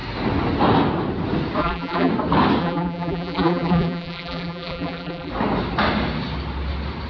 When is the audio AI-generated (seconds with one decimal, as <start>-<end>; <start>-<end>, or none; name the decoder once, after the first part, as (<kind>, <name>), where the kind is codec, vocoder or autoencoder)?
1.6-2.1 (vocoder, BigVGAN v2); 2.6-5.3